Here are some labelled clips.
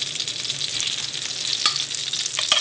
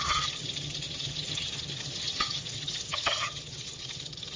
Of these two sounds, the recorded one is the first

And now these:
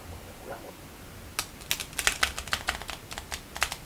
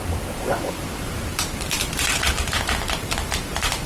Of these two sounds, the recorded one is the first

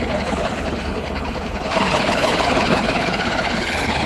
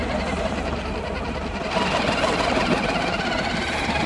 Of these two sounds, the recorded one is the second